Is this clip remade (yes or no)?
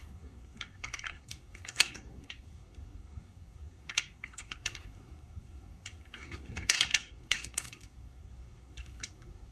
yes